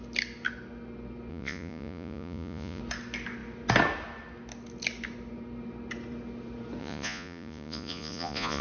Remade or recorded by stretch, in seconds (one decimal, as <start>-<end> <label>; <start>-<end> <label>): 0.0-1.3 recorded; 1.3-2.8 remade; 2.8-6.8 recorded; 6.8-8.6 remade